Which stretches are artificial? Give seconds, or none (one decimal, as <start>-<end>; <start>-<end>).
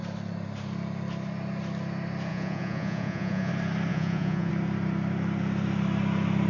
2.3-3.5; 3.9-4.5